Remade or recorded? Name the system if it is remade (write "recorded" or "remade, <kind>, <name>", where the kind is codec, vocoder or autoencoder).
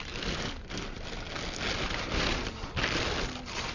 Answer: recorded